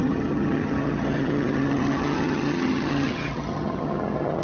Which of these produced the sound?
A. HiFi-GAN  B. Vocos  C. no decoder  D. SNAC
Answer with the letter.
A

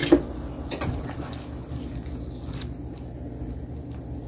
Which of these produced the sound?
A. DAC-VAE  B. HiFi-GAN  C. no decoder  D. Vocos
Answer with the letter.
C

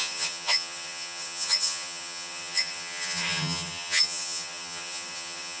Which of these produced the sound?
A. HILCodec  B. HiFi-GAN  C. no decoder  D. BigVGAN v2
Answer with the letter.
B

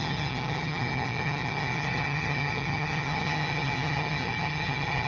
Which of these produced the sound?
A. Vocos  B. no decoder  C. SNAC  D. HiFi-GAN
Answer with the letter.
D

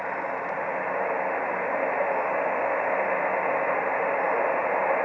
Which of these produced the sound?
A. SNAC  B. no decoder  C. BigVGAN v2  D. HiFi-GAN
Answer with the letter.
B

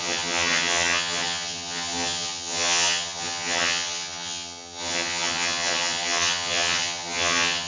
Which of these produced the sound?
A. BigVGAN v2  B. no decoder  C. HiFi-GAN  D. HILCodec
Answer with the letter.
C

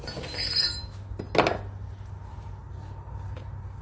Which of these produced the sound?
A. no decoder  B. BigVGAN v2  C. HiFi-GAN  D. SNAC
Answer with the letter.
A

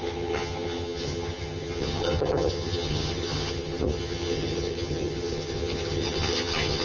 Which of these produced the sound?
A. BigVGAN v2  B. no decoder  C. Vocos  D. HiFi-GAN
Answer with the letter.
D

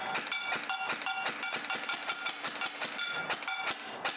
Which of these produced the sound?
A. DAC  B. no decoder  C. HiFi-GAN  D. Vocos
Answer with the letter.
B